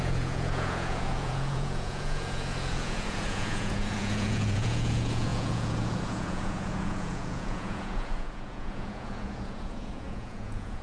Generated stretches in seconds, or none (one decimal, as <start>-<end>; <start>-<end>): 0.0-10.8